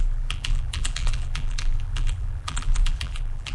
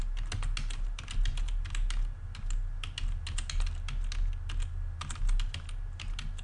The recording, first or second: second